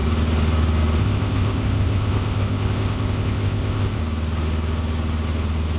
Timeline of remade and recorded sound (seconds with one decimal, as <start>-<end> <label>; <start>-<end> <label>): 0.0-1.0 recorded; 1.0-4.0 remade; 4.0-5.8 recorded